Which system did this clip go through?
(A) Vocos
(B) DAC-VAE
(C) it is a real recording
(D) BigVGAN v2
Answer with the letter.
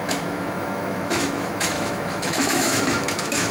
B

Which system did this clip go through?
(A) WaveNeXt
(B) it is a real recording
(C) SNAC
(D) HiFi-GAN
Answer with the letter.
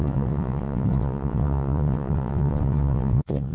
A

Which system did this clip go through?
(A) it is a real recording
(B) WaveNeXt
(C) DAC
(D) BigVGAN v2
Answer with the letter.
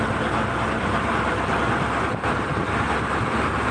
A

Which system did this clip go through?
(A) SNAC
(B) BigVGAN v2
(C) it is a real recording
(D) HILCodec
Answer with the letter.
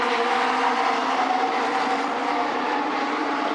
B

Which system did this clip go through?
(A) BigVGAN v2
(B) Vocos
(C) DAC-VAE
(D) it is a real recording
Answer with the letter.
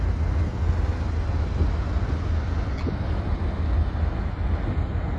D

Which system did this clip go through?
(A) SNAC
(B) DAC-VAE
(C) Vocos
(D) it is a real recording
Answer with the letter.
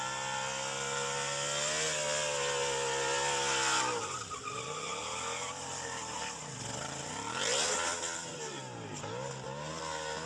D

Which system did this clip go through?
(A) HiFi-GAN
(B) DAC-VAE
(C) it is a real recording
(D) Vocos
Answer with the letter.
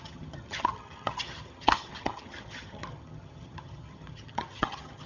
A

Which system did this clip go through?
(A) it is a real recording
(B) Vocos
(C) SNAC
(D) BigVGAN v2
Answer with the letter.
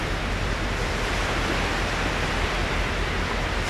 A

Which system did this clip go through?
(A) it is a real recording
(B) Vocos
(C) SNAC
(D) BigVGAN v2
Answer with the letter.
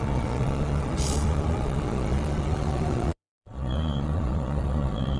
B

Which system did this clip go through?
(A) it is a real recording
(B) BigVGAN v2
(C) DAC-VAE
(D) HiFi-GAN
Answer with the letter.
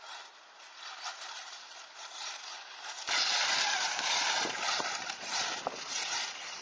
B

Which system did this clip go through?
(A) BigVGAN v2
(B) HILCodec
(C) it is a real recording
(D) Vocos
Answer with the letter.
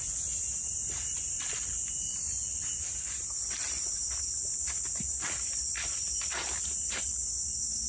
C